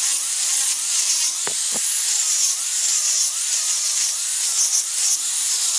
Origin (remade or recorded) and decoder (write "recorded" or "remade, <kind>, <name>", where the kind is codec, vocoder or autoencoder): recorded